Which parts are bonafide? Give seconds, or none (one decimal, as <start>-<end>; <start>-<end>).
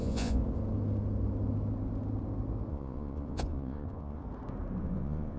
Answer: 0.4-2.7; 4.2-4.8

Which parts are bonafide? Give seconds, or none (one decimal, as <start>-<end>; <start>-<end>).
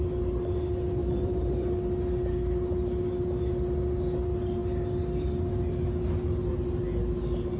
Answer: 0.0-1.0; 1.7-7.6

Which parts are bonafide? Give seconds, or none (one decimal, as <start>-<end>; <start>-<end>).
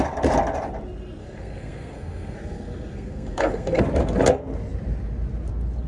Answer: 0.0-1.2; 3.8-5.9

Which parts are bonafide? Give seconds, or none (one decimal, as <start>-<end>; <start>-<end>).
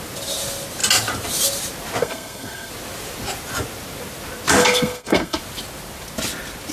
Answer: 0.0-2.0; 2.7-4.6; 5.4-6.7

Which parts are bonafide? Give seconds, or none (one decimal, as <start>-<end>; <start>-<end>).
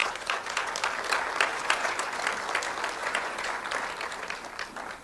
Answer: 0.7-1.5; 2.2-3.0; 3.6-5.0